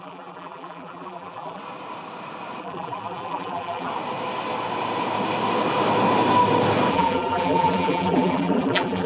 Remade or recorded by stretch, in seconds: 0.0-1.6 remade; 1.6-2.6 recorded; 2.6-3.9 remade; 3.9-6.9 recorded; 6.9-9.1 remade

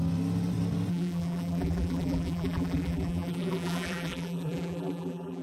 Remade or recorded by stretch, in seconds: 0.0-0.9 recorded; 0.9-5.4 remade

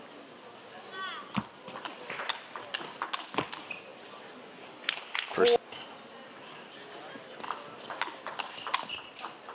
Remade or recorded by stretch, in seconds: 0.0-9.5 recorded

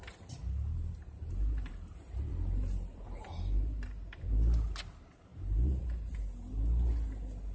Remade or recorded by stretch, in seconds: 0.0-0.4 recorded; 0.4-4.3 remade; 4.3-5.3 recorded; 5.3-6.2 remade; 6.2-7.5 recorded